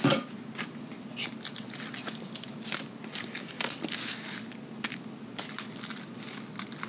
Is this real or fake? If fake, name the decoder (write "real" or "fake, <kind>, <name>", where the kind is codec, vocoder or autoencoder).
real